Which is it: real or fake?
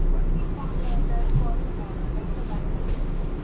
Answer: real